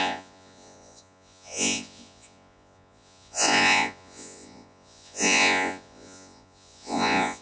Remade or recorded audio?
remade